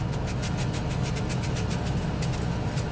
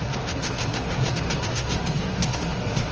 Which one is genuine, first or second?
first